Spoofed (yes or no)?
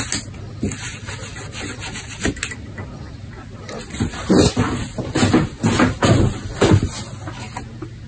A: no